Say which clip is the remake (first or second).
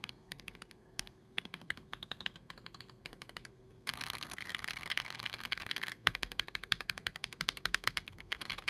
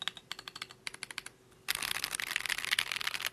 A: first